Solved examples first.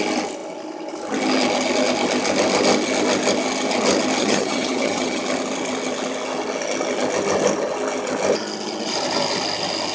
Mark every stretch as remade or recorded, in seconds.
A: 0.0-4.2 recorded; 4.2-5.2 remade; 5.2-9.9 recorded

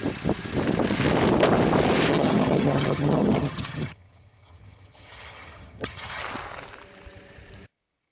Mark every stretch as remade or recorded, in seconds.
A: 0.0-2.1 recorded; 2.1-6.2 remade; 6.2-8.1 recorded

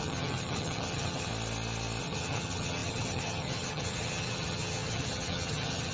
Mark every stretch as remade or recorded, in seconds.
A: 0.0-1.3 remade; 1.3-2.0 recorded; 2.0-5.9 remade

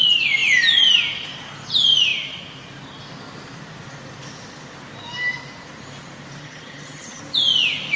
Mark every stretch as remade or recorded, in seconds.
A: 0.0-6.4 recorded; 6.4-7.2 remade; 7.2-8.0 recorded